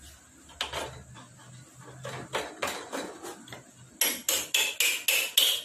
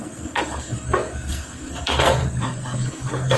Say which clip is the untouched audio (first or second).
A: first